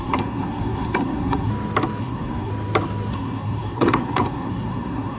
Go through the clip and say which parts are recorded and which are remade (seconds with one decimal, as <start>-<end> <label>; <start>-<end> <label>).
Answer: 0.0-1.5 remade; 1.5-2.0 recorded; 2.0-2.5 remade; 2.5-3.1 recorded; 3.1-5.2 remade